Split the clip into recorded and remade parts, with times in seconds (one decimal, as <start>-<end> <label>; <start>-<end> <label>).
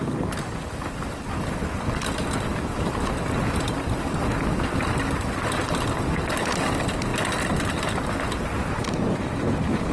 0.0-9.9 recorded